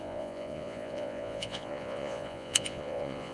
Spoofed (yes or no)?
yes